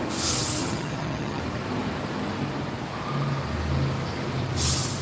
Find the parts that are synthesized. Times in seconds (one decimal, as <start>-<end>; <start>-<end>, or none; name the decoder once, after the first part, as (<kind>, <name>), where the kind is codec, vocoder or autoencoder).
0.6-1.4 (vocoder, HiFi-GAN)